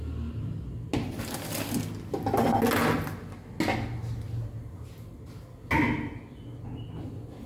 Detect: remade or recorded recorded